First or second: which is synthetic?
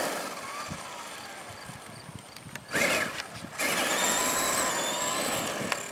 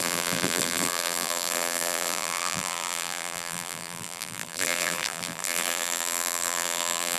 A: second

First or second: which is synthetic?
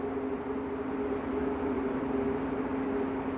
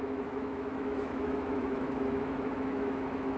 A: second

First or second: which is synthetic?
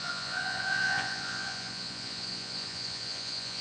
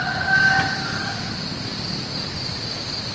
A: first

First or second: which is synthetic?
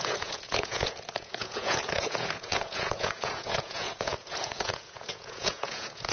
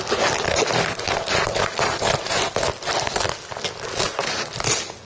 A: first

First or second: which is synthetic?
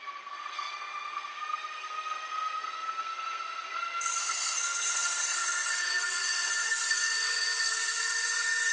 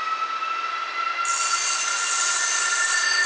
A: first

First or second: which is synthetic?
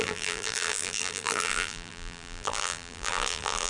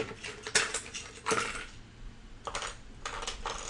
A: first